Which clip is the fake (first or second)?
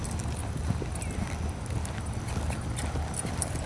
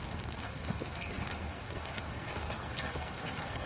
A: second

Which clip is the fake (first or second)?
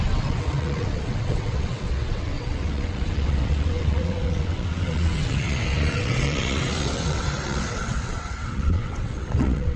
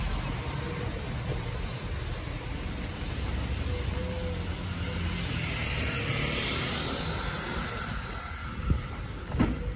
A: first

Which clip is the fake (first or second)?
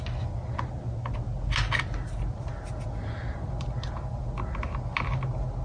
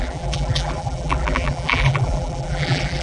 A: second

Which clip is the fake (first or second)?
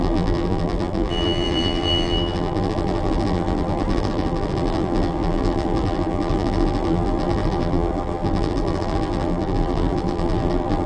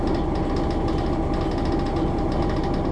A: first